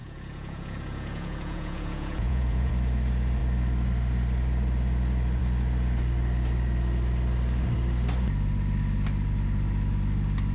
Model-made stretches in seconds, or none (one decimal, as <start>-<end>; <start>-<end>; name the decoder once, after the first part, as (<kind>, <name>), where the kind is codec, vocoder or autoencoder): 0.0-2.7 (vocoder, Vocos)